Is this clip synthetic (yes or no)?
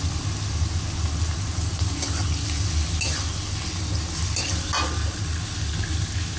no